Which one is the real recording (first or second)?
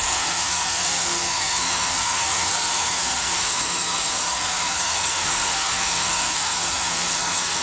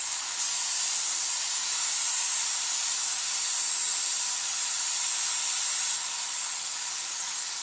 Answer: second